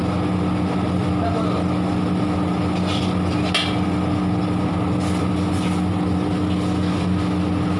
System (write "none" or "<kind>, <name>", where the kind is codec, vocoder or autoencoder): none